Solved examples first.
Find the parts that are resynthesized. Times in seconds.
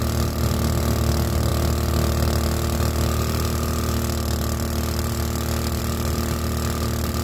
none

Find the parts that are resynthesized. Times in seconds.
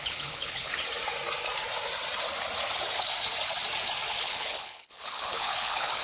0.0-0.7 (codec, HILCodec); 4.2-6.0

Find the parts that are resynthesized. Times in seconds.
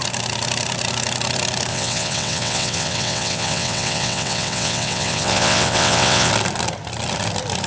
1.7-6.3 (vocoder, WaveNeXt)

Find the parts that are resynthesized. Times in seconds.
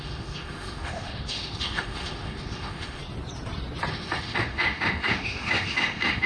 0.0-3.0 (autoencoder, DAC-VAE); 3.9-6.3